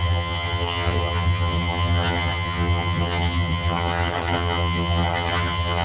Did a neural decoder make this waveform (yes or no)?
yes